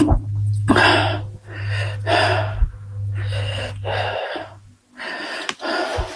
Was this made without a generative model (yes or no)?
yes